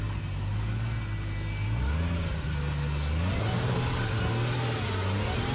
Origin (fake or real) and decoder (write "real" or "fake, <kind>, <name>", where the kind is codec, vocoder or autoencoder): real